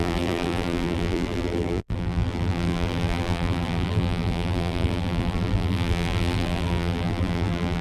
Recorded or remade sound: remade